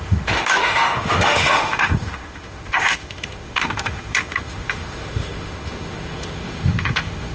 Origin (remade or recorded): remade